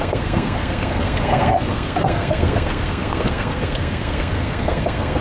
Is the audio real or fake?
fake